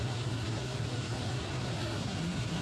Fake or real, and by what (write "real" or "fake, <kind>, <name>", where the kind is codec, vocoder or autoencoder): fake, codec, SNAC